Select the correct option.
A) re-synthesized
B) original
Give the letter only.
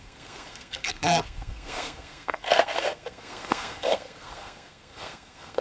A